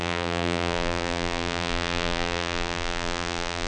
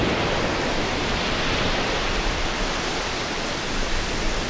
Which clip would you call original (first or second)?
second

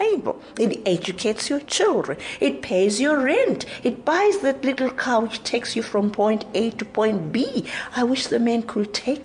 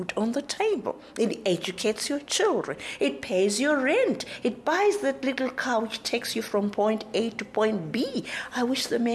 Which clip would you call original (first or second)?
second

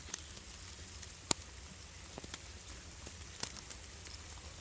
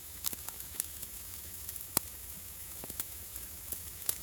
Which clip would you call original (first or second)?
first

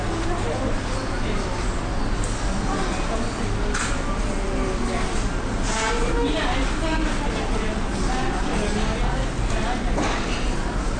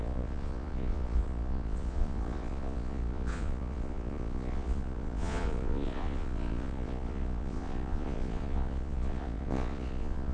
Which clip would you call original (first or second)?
first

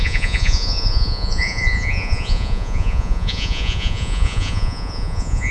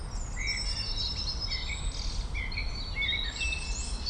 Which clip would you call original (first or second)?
second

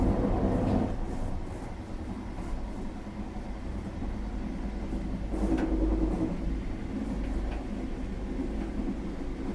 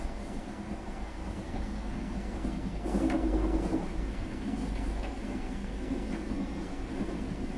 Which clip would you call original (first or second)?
first